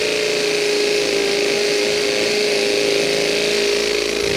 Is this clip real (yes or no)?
yes